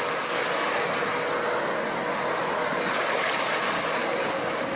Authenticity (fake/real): real